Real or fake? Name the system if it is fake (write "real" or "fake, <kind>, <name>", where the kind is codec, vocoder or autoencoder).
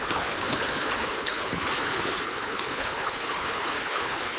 fake, codec, HILCodec